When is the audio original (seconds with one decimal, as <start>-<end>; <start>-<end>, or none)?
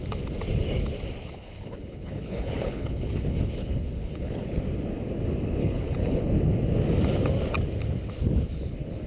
0.0-1.2; 4.6-5.6; 6.2-9.1